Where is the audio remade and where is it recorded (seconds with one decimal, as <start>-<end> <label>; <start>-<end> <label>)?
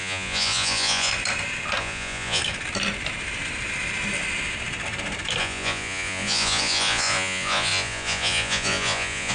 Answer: 0.0-1.1 remade; 1.1-1.8 recorded; 1.8-2.4 remade; 2.4-5.4 recorded; 5.4-9.3 remade